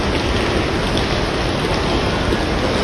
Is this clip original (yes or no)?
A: yes